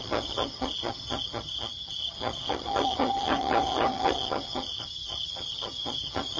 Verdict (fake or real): fake